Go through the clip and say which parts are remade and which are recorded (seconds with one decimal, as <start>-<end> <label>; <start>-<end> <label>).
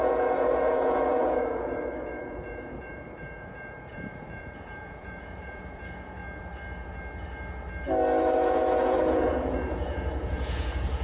0.0-6.2 remade; 6.2-8.2 recorded; 8.2-11.0 remade